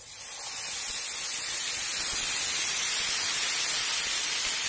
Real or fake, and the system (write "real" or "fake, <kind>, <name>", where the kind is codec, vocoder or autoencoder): real